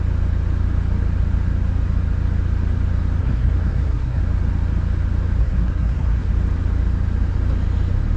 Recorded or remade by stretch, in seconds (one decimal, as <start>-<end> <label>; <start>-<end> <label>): 0.0-3.2 recorded; 3.2-4.2 remade; 4.2-5.4 recorded; 5.4-6.3 remade; 6.3-8.2 recorded